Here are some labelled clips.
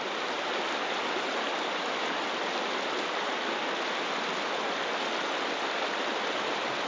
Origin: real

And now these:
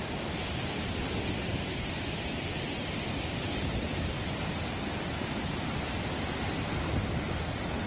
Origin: real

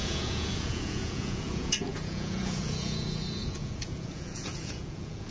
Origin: fake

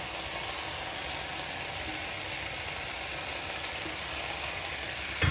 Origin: real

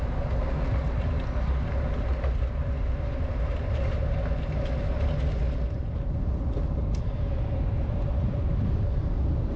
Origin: real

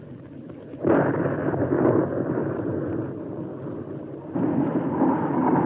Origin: real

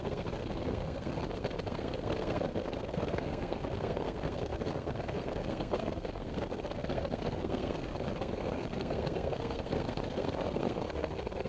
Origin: fake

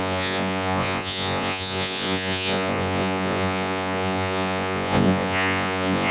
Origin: fake